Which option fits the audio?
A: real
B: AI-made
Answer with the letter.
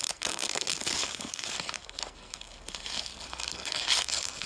B